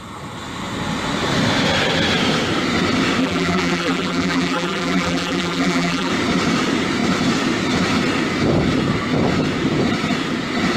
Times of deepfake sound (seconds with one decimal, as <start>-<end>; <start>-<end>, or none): 3.2-6.1